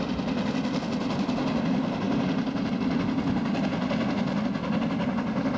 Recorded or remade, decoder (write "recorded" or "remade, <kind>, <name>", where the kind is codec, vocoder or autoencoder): recorded